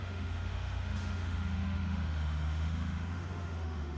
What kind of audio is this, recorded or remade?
remade